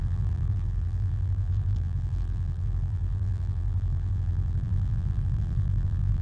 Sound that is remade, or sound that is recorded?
remade